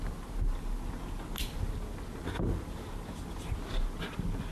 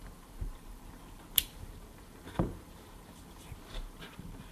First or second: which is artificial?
second